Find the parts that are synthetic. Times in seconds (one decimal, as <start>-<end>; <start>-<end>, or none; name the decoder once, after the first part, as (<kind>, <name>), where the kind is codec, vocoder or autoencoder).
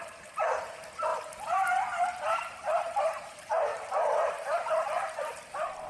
1.1-3.3 (vocoder, BigVGAN v2); 3.7-5.4